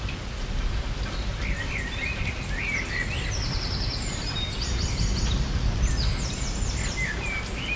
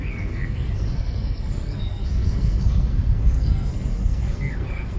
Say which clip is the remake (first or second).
second